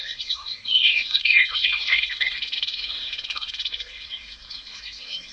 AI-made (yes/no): yes